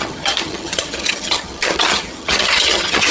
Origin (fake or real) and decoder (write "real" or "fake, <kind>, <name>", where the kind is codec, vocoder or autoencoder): fake, vocoder, HiFi-GAN